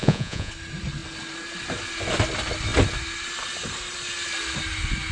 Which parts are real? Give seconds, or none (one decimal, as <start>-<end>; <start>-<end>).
0.5-5.1